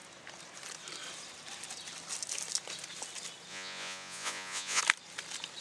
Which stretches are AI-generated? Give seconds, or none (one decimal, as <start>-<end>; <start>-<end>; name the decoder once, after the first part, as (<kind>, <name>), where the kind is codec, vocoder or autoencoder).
3.5-4.8 (vocoder, Vocos)